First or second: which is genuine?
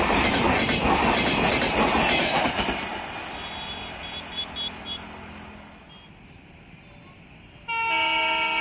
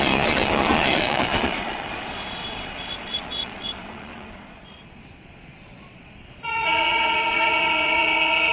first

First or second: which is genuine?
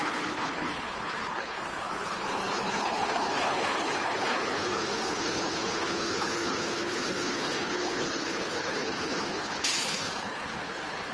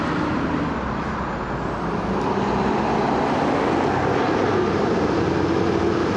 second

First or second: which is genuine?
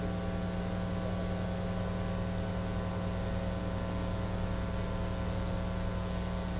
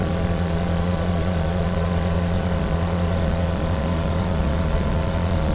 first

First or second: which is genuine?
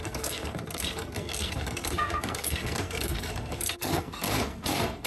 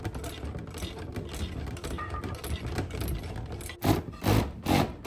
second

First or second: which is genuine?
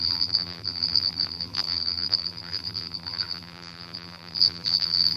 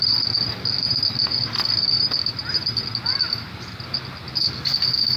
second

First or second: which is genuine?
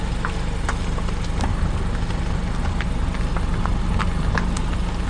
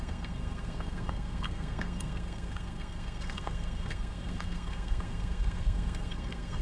first